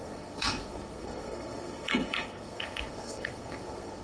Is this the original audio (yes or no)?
no